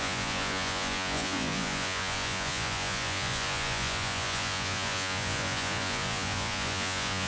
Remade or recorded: remade